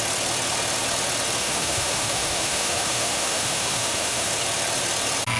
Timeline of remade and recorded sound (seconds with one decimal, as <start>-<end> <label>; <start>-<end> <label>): 0.0-1.4 recorded; 1.4-4.3 remade; 4.3-5.4 recorded